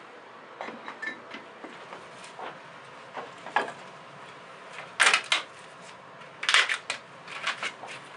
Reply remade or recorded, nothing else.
recorded